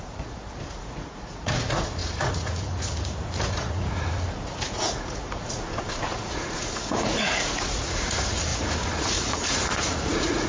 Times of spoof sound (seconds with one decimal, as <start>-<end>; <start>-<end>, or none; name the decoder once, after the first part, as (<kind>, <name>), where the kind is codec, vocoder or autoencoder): 0.0-10.5 (vocoder, Vocos)